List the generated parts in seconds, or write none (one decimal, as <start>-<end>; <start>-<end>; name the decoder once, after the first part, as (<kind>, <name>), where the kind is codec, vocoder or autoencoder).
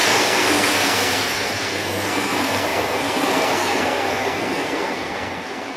0.0-5.8 (codec, SNAC)